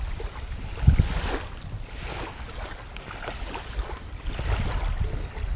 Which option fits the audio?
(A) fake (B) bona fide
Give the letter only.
B